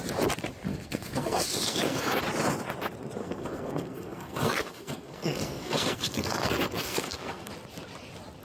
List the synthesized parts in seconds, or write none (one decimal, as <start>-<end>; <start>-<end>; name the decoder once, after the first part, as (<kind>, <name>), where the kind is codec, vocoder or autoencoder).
0.7-2.2 (codec, SNAC); 3.2-7.5